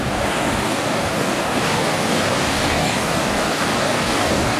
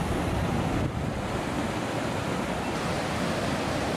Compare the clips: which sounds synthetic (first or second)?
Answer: first